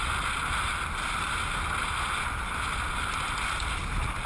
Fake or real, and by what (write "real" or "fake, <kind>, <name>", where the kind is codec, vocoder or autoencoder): real